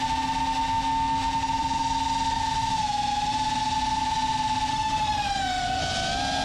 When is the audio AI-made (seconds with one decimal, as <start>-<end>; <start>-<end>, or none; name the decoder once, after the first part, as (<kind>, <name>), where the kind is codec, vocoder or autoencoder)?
4.7-5.8 (autoencoder, DAC-VAE)